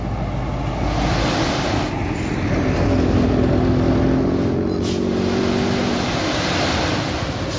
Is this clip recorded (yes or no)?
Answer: yes